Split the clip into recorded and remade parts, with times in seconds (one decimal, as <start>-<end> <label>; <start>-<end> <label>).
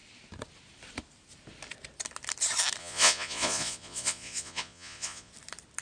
0.0-2.8 recorded; 2.8-5.3 remade; 5.3-5.8 recorded